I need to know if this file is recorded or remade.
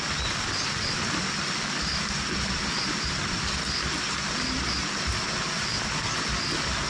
recorded